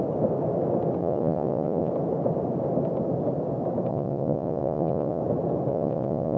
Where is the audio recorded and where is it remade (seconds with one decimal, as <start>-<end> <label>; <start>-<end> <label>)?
0.0-1.0 recorded; 1.0-1.9 remade; 1.9-3.9 recorded; 3.9-5.2 remade; 5.2-5.7 recorded; 5.7-6.4 remade